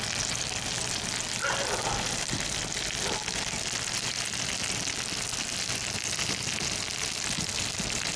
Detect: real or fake real